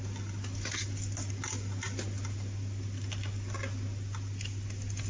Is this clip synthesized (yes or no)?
no